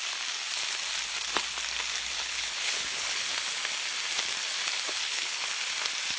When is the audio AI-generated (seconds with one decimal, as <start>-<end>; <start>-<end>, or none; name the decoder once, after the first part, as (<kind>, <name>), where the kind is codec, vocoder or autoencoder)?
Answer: 2.1-3.3 (codec, HILCodec); 5.0-5.5